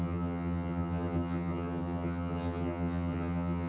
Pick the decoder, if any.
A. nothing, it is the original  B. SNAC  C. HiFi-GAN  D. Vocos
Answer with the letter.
C